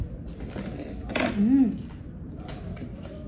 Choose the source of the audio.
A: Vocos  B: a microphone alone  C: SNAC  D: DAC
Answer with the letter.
B